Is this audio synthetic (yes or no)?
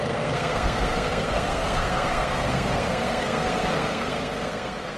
yes